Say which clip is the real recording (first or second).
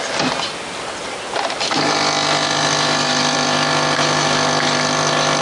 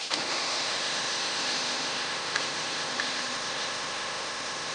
first